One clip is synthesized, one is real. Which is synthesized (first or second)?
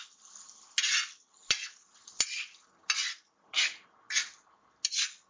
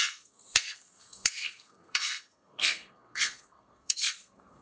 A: second